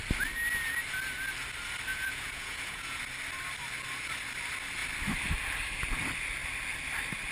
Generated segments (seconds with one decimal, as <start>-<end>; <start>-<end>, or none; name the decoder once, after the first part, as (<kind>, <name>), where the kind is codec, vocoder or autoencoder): 1.9-3.0 (vocoder, Vocos)